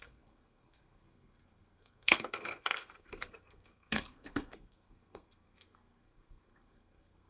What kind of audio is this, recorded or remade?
remade